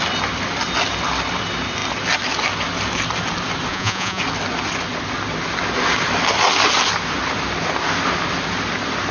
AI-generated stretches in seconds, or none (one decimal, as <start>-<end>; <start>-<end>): 3.7-4.2